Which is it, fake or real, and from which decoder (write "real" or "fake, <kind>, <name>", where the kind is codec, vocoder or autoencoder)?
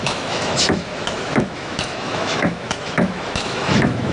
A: fake, autoencoder, DAC-VAE